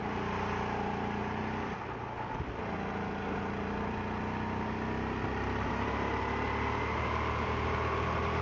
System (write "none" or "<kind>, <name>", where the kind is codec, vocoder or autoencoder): none